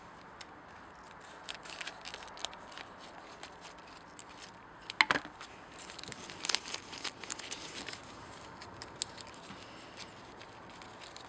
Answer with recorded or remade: recorded